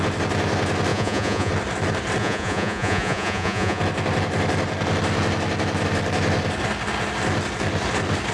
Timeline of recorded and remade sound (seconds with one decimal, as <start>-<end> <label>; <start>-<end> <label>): 0.0-0.9 recorded; 0.9-1.5 remade; 1.5-2.2 recorded; 2.2-3.8 remade; 3.8-8.3 recorded